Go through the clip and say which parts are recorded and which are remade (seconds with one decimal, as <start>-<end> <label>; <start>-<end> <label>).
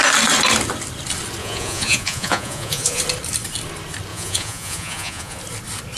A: 0.0-1.4 recorded; 1.4-3.0 remade; 3.0-4.1 recorded; 4.1-5.4 remade; 5.4-6.0 recorded